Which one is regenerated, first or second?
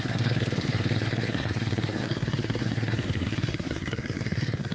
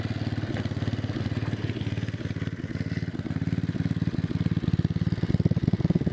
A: first